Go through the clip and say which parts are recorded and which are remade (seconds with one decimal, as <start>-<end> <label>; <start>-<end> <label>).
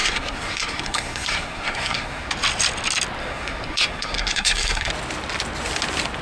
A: 0.0-2.3 remade; 2.3-3.2 recorded; 3.2-4.9 remade; 4.9-6.2 recorded